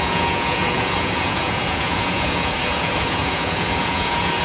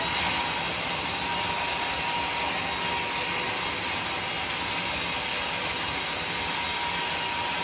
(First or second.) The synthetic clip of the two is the first